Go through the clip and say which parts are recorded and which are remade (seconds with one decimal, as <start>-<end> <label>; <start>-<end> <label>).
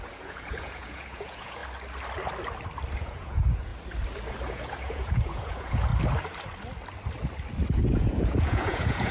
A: 0.0-1.6 remade; 1.6-3.0 recorded; 3.0-3.7 remade; 3.7-4.5 recorded; 4.5-5.9 remade; 5.9-7.8 recorded; 7.8-9.1 remade